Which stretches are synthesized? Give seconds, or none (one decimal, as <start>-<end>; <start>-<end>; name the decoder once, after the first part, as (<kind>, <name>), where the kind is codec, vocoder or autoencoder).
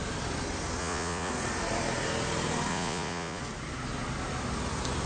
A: 0.8-1.3 (vocoder, Vocos); 2.7-3.4